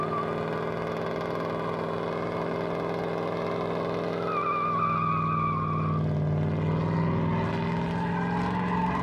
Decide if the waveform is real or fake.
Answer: real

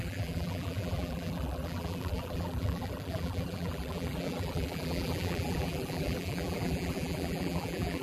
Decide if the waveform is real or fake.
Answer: fake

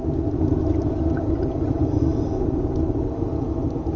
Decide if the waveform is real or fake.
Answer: fake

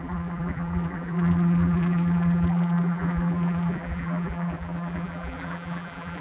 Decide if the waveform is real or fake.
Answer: fake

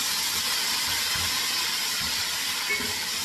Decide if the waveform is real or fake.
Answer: real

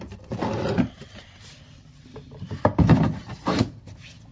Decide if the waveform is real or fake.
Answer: fake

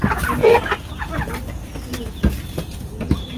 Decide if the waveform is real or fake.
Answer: real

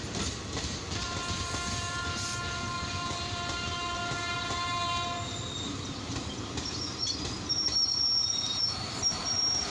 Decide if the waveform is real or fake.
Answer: fake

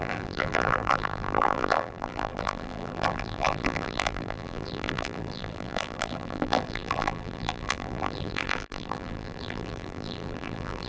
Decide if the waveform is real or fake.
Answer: fake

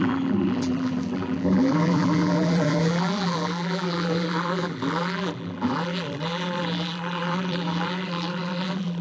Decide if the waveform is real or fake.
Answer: fake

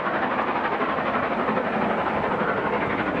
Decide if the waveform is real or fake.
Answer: real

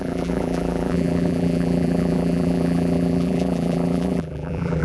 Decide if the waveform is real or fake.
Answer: fake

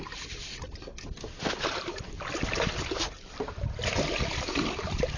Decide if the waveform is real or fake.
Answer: fake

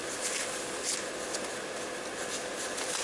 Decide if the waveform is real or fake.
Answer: real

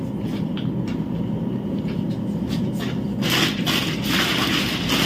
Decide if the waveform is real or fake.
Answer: real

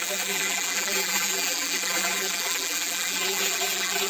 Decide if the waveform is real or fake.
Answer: fake